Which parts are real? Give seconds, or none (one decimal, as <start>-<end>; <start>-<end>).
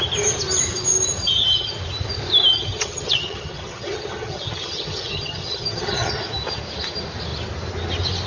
0.0-1.2; 1.7-2.5; 6.1-8.3